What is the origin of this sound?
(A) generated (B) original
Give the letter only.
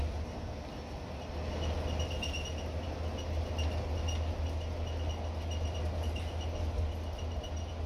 B